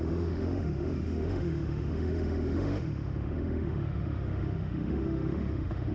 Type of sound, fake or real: fake